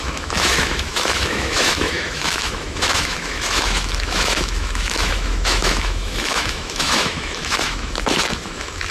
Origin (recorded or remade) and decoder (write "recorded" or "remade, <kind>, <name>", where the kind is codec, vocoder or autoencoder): remade, autoencoder, DAC-VAE